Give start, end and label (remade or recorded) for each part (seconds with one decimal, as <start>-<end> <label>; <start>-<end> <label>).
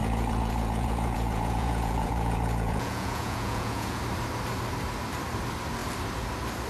0.0-4.0 remade; 4.0-6.7 recorded